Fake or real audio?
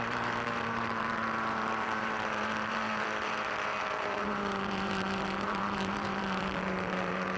fake